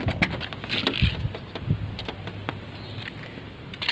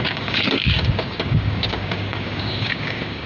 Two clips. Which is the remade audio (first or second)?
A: second